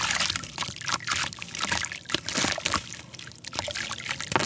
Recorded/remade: recorded